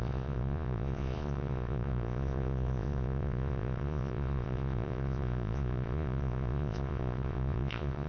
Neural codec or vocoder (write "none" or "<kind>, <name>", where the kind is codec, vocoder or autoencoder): vocoder, Vocos